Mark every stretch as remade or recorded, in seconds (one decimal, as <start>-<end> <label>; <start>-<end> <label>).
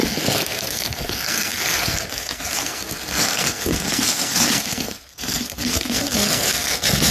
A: 0.0-7.1 remade